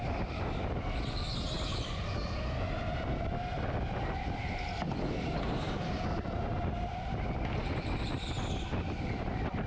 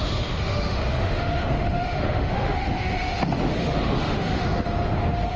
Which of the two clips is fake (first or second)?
second